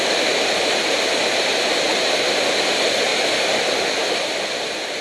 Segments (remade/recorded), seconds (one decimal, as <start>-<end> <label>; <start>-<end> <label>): 0.0-5.0 recorded